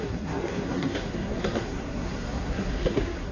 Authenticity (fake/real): fake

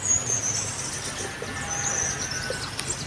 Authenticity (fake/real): real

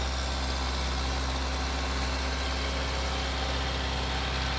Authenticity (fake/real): real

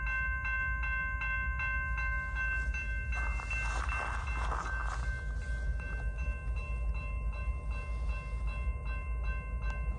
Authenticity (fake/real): real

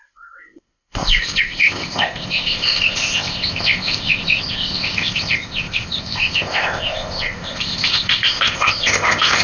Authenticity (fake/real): fake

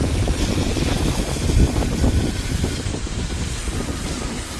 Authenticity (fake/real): real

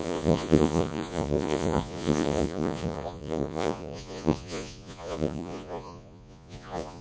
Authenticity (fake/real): fake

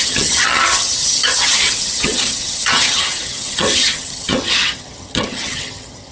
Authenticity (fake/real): fake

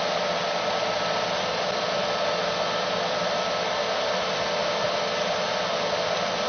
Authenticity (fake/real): real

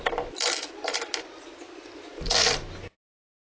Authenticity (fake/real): real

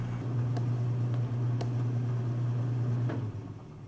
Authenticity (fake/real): real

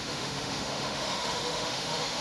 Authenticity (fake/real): fake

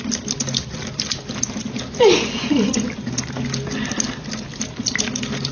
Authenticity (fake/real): real